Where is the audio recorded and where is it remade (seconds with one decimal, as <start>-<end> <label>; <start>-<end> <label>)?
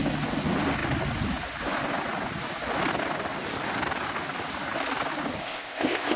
0.0-5.4 recorded; 5.4-6.2 remade